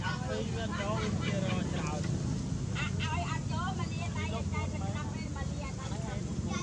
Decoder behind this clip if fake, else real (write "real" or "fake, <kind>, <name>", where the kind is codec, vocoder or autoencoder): real